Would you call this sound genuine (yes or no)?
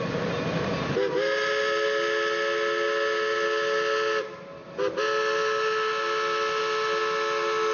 yes